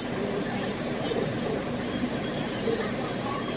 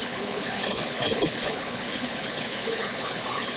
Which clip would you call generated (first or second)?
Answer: second